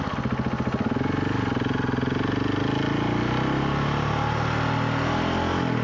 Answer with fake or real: real